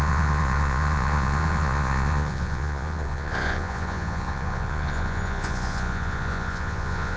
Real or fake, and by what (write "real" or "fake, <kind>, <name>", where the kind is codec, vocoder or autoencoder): fake, vocoder, Vocos